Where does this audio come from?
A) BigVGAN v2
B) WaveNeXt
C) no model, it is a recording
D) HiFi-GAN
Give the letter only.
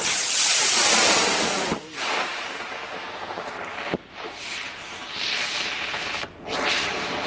A